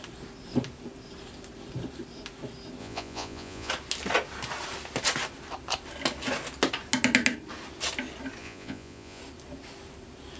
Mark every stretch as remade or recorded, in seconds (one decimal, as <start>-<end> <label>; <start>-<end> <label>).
0.0-2.8 recorded; 2.8-3.7 remade; 3.7-8.4 recorded; 8.4-9.2 remade; 9.2-10.4 recorded